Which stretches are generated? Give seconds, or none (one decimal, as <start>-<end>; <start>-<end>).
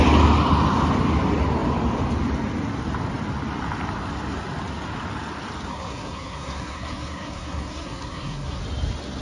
5.7-8.6